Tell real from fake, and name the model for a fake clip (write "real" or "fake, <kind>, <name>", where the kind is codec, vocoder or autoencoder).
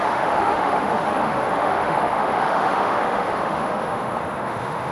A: fake, autoencoder, DAC-VAE